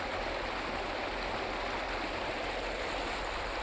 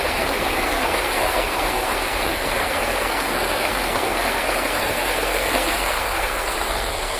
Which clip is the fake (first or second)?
second